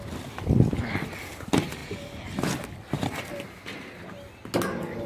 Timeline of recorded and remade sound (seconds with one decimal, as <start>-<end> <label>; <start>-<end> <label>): 0.0-5.1 recorded